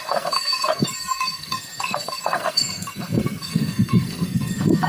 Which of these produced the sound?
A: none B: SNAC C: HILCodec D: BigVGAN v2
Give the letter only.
B